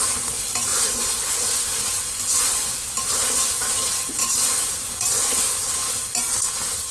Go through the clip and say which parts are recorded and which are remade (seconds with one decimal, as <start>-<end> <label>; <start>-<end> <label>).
0.0-0.7 recorded; 0.7-2.9 remade; 2.9-4.2 recorded; 4.2-4.9 remade; 4.9-6.9 recorded